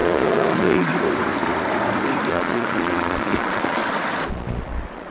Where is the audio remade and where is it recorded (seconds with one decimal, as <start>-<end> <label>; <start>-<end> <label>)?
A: 0.0-0.9 remade; 0.9-2.3 recorded; 2.3-3.8 remade; 3.8-4.3 recorded; 4.3-5.1 remade